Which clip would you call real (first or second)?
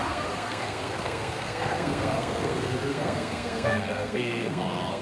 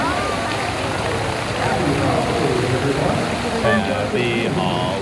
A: second